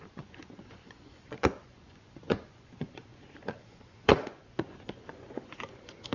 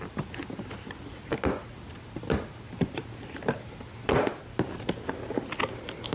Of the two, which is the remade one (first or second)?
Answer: first